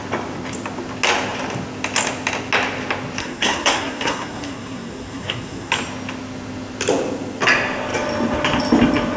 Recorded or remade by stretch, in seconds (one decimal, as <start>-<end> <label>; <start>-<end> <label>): 0.0-3.2 recorded; 3.2-5.7 remade; 5.7-9.2 recorded